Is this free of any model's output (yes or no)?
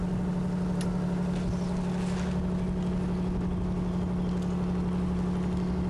yes